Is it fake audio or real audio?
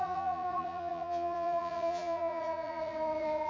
fake